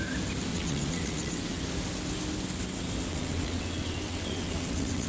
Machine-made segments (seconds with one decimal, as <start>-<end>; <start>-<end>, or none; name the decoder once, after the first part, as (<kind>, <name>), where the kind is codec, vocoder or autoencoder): 0.5-1.6 (vocoder, WaveNeXt); 3.1-5.1